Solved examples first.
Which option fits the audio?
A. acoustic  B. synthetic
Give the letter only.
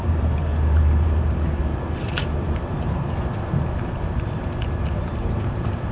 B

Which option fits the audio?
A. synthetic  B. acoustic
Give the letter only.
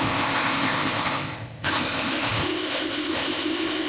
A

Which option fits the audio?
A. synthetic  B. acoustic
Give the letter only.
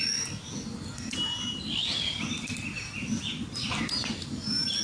B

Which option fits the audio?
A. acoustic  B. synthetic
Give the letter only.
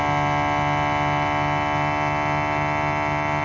A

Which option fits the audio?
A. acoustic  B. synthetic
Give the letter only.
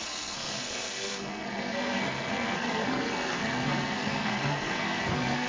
B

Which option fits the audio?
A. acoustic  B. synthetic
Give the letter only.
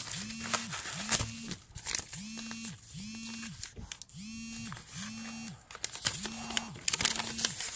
A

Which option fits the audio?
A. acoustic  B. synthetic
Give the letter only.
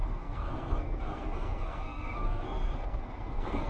B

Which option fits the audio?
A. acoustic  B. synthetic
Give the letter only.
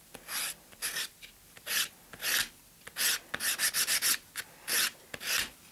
A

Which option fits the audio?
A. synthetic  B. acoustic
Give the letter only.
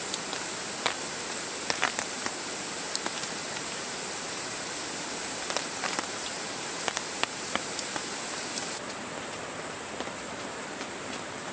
A